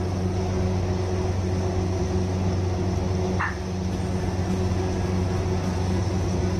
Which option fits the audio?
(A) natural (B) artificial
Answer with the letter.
A